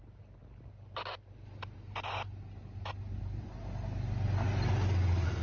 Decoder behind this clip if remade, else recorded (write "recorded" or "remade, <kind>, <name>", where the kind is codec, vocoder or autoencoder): recorded